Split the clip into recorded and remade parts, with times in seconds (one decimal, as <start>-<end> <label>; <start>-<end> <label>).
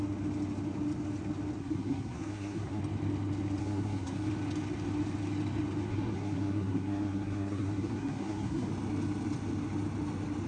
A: 0.0-1.6 recorded; 1.6-2.8 remade; 2.8-3.6 recorded; 3.6-4.3 remade; 4.3-5.9 recorded; 5.9-8.7 remade; 8.7-10.5 recorded